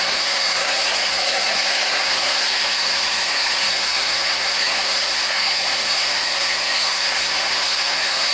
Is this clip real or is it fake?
fake